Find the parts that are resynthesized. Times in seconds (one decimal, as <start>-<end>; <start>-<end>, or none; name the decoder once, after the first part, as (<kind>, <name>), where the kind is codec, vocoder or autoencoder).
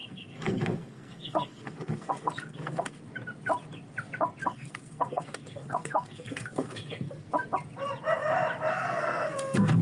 0.0-3.0 (codec, SNAC); 4.4-7.3; 8.7-9.8